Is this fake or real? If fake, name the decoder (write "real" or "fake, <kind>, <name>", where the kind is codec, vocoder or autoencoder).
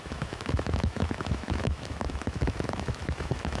fake, autoencoder, DAC-VAE